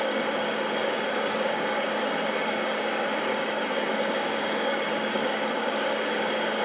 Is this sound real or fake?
fake